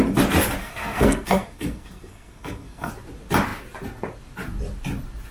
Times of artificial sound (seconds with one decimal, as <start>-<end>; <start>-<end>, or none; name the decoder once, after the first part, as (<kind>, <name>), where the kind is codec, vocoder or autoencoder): 0.6-2.9 (codec, SNAC)